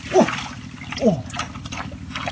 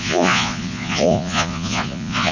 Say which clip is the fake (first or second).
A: second